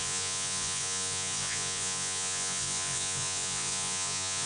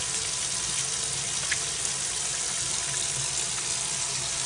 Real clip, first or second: second